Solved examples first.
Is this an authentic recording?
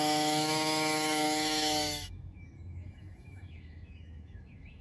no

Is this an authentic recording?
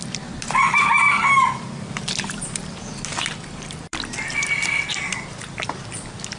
no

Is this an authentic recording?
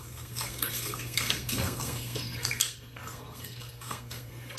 no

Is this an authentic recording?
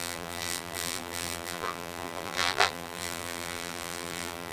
no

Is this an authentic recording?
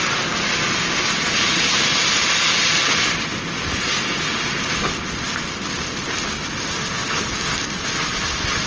yes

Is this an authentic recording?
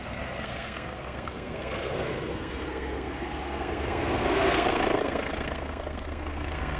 no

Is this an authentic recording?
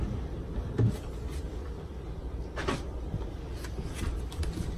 yes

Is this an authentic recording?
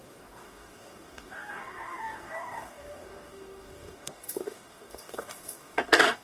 no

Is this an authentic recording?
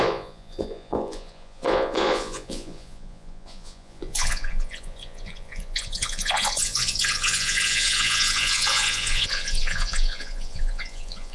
no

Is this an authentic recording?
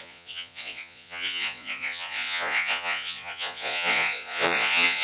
no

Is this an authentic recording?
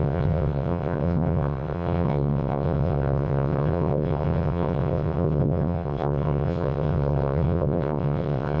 no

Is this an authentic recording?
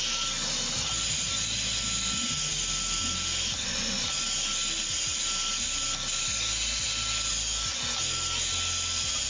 yes